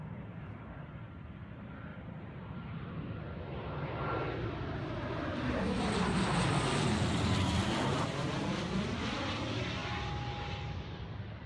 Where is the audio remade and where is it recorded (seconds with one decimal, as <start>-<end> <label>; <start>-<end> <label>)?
0.0-11.5 recorded